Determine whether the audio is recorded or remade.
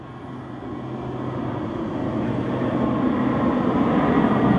recorded